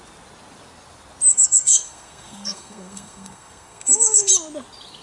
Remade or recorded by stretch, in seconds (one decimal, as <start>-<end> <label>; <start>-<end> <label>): 0.0-1.3 recorded; 1.3-4.3 remade; 4.3-5.0 recorded